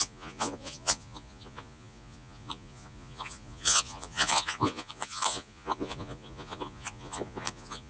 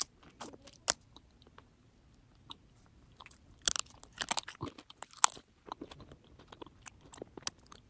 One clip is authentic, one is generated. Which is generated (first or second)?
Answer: first